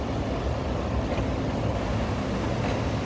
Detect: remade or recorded recorded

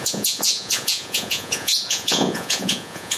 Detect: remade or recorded remade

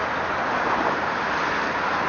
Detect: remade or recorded recorded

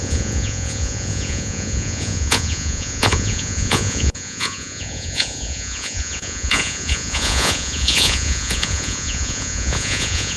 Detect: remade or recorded remade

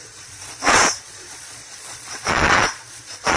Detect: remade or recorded remade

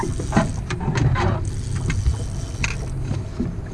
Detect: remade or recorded recorded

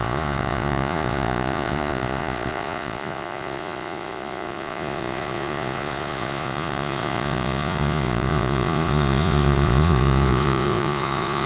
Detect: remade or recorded remade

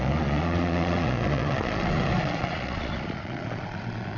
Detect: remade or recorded remade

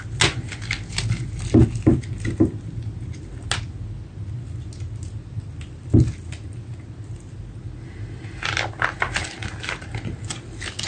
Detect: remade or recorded recorded